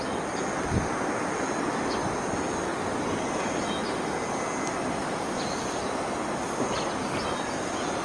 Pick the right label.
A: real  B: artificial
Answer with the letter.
A